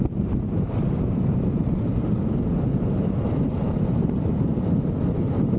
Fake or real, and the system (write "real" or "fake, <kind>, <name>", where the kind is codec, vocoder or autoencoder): fake, vocoder, BigVGAN v2